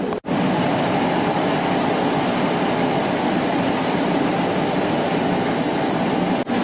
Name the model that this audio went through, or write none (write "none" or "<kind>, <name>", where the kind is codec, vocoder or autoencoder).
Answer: none